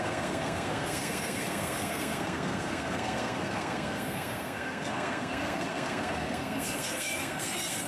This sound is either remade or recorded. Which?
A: remade